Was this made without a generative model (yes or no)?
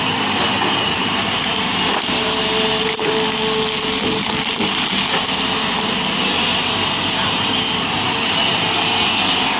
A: yes